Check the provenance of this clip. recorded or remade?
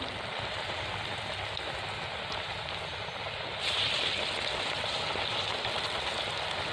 recorded